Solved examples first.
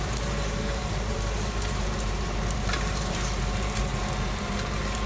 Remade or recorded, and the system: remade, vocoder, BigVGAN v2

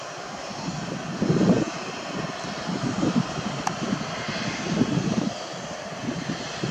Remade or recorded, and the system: recorded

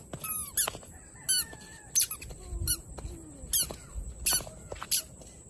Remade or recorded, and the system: recorded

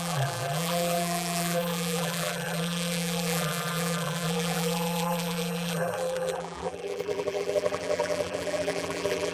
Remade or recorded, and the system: remade, vocoder, BigVGAN v2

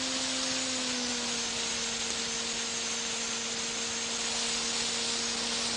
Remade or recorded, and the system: recorded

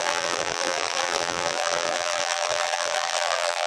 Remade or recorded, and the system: remade, vocoder, BigVGAN v2